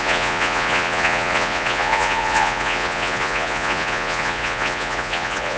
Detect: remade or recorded remade